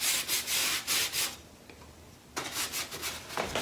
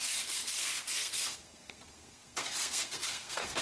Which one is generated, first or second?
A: second